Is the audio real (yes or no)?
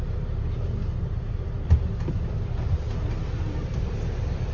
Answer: no